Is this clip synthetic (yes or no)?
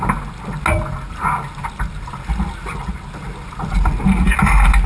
no